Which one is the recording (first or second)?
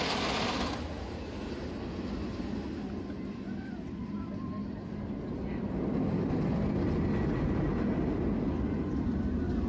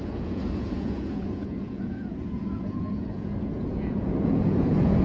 first